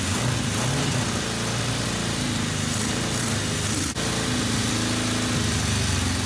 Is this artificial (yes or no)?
no